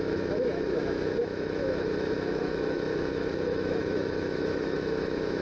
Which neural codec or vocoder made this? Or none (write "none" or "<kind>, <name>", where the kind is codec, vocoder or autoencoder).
autoencoder, DAC-VAE